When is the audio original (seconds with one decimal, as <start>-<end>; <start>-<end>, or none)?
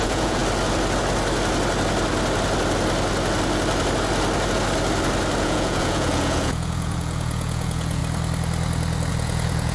0.4-5.4; 8.0-9.1